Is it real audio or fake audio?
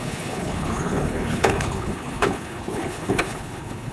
fake